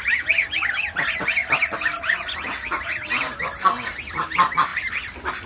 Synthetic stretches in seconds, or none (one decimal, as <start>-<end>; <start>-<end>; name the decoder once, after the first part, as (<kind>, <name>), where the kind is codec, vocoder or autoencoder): none